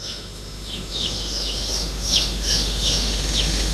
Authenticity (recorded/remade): remade